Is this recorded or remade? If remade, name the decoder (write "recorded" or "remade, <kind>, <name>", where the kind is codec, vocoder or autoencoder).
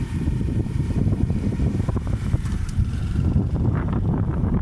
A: remade, vocoder, BigVGAN v2